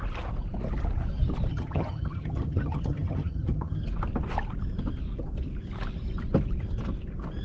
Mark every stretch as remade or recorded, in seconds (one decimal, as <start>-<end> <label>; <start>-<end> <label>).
0.0-1.5 recorded; 1.5-3.8 remade; 3.8-7.4 recorded